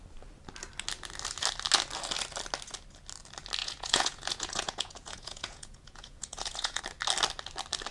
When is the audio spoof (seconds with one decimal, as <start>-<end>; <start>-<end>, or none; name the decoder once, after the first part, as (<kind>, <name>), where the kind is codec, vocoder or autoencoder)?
3.6-6.8 (vocoder, Vocos)